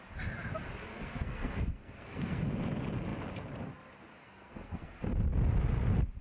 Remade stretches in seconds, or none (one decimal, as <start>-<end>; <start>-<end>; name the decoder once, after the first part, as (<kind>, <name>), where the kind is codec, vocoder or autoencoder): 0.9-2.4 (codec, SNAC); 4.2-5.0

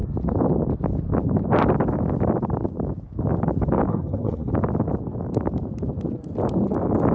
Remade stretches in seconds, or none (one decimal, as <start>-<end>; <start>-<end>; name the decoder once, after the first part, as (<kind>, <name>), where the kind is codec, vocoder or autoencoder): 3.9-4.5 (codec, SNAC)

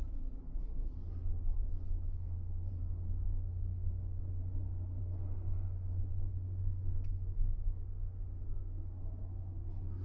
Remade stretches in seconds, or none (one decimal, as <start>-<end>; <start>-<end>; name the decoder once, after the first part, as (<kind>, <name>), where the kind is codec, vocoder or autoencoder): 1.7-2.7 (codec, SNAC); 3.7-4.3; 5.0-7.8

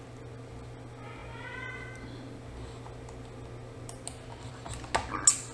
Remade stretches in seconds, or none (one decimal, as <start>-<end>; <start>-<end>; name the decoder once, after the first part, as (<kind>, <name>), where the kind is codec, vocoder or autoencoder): none